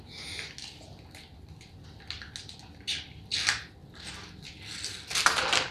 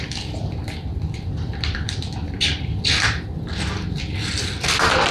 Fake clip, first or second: second